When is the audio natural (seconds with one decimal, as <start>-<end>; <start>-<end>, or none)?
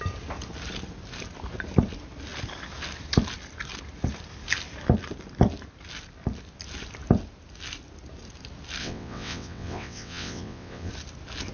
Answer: 0.0-8.8; 10.9-11.5